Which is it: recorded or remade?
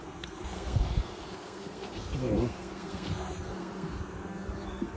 remade